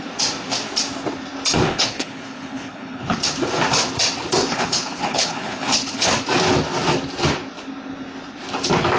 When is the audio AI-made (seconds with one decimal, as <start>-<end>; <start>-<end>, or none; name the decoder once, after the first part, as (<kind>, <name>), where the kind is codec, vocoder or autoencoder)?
1.7-3.2 (codec, HILCodec); 4.5-6.1